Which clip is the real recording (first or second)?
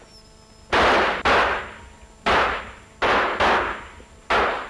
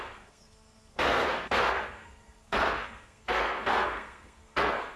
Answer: first